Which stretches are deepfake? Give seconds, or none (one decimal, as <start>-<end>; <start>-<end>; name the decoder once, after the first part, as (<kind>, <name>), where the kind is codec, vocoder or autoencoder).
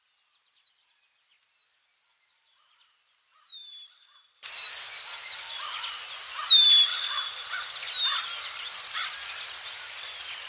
3.5-6.4 (vocoder, BigVGAN v2); 6.9-7.4